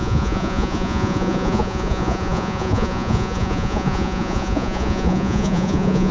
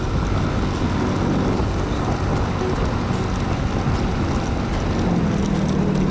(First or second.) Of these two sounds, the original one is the second